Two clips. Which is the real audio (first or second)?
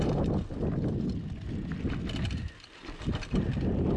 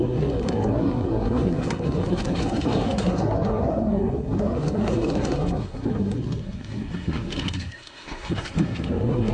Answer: first